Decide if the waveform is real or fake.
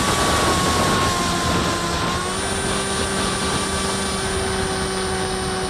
real